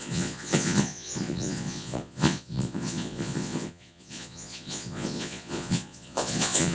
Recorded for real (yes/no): no